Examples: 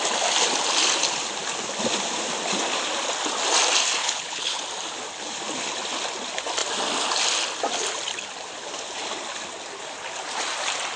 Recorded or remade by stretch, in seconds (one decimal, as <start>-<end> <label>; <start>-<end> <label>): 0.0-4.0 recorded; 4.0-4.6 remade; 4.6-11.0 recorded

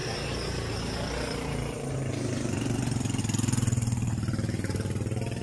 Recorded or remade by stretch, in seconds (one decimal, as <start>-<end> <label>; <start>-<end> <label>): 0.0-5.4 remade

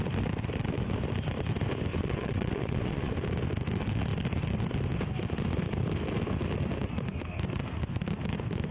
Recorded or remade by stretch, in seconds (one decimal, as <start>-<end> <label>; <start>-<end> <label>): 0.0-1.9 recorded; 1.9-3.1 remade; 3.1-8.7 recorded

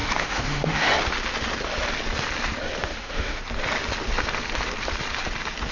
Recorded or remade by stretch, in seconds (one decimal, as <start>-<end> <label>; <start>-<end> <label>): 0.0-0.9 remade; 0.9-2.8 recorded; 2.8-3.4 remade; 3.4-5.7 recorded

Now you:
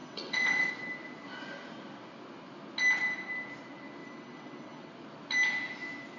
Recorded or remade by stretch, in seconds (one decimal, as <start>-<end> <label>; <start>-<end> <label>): 0.0-0.7 remade; 0.7-4.0 recorded; 4.0-4.9 remade; 4.9-6.2 recorded

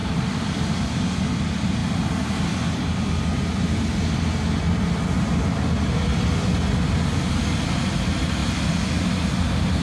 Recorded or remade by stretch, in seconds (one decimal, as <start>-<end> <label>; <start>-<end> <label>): 0.0-0.8 remade; 0.8-8.4 recorded; 8.4-9.0 remade; 9.0-9.8 recorded

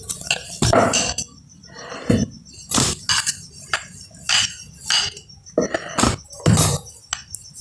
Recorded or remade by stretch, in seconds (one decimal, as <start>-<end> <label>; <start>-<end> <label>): 0.0-7.6 recorded